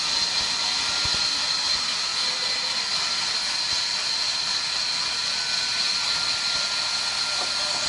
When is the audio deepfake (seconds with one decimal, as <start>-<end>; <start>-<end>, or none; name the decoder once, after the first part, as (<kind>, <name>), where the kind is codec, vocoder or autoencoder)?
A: none